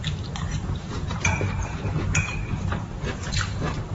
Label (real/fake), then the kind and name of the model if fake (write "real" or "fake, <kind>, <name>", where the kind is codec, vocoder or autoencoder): fake, vocoder, BigVGAN v2